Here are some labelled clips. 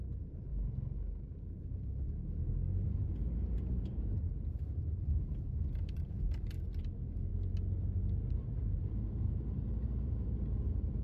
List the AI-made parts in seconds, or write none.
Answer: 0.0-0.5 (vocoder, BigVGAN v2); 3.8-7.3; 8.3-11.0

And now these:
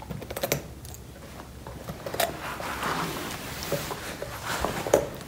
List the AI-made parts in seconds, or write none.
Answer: 2.1-5.3 (vocoder, BigVGAN v2)

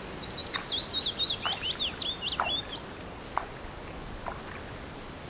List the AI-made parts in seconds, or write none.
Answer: none

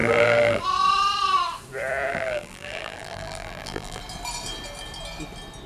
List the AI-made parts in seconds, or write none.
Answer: 0.0-0.6 (vocoder, BigVGAN v2); 2.1-4.0

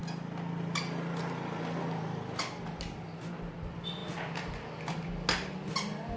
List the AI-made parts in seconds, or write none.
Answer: none

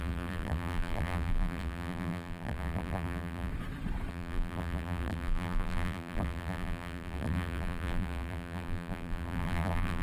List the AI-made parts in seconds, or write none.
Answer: 0.0-3.5 (vocoder, BigVGAN v2); 4.1-10.0

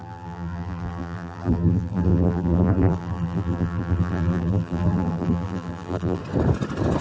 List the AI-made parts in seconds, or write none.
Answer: 0.0-6.2 (vocoder, BigVGAN v2)